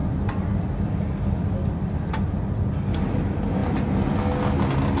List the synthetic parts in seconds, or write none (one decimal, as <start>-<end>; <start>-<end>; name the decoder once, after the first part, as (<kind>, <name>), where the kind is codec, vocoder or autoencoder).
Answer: none